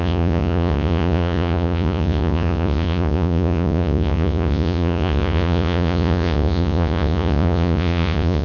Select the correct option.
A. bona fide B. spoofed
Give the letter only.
B